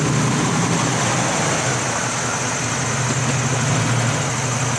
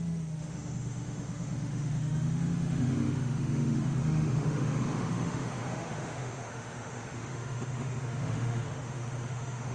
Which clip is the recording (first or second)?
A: first